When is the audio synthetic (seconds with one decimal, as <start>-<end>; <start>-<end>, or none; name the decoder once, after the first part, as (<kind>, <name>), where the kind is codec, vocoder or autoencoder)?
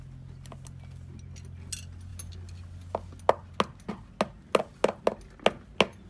none